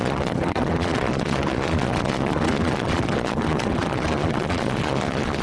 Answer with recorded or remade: remade